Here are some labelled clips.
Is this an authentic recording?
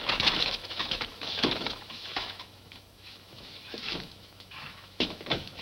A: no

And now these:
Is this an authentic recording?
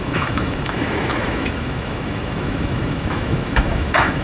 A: no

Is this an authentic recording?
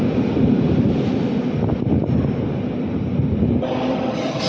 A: yes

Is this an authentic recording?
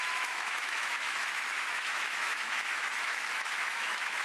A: no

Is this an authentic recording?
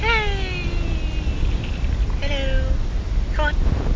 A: yes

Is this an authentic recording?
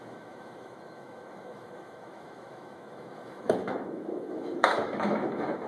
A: no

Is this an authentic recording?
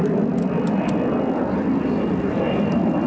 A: yes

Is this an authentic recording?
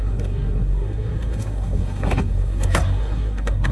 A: no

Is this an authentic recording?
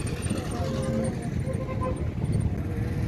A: yes